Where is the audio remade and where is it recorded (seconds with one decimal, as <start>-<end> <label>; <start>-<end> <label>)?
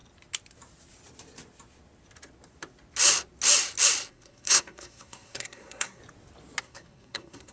0.0-4.1 recorded; 4.1-6.0 remade; 6.0-6.6 recorded; 6.6-7.5 remade